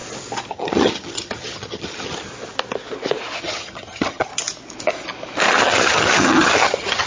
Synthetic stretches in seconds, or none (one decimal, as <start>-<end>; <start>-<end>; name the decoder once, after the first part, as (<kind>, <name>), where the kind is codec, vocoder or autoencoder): 0.5-2.3 (vocoder, HiFi-GAN); 3.4-4.3; 5.6-7.1